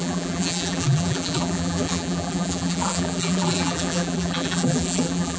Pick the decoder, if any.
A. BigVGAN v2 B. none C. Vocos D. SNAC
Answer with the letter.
A